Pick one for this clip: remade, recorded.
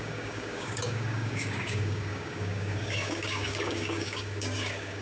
remade